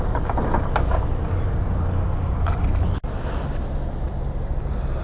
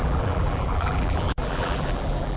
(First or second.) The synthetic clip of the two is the second